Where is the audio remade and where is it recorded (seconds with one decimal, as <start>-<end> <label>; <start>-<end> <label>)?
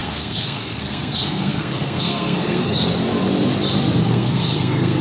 0.0-2.9 remade; 2.9-4.0 recorded; 4.0-5.0 remade